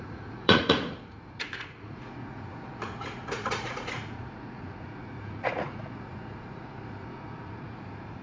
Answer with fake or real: fake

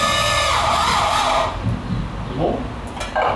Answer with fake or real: real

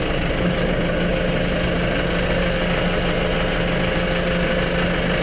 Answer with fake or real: real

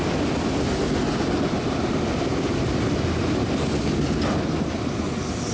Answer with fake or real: real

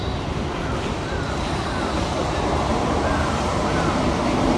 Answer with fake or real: fake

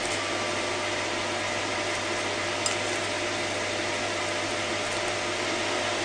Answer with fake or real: real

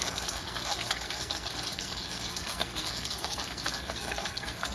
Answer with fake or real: fake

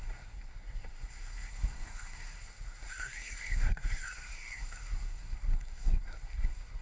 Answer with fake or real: fake